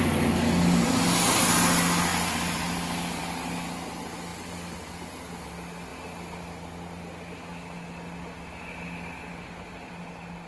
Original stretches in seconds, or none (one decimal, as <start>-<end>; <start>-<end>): 0.0-10.5